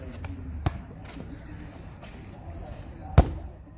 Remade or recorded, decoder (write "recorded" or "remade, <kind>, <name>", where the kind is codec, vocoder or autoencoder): recorded